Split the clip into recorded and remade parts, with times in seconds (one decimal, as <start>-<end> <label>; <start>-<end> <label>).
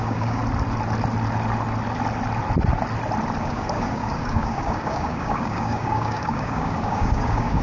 0.0-0.4 remade; 0.4-3.4 recorded; 3.4-7.6 remade